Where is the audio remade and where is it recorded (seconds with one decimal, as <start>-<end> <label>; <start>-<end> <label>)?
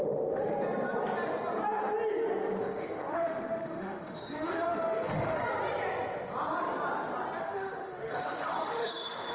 0.0-0.5 remade; 0.5-2.6 recorded; 2.6-5.4 remade; 5.4-7.4 recorded; 7.4-9.3 remade